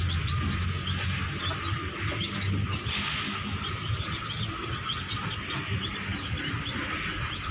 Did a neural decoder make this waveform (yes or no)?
no